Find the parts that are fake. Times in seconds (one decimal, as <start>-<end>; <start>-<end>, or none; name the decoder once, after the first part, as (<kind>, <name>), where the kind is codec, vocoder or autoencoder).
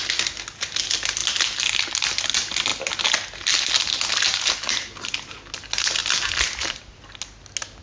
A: none